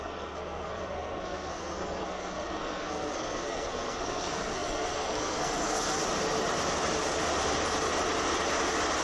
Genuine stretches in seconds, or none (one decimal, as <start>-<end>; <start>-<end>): 6.0-9.0